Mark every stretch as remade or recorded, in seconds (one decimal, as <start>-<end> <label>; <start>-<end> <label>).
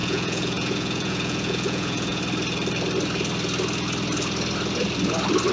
0.0-2.2 remade; 2.2-5.5 recorded